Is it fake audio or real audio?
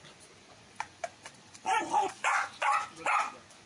fake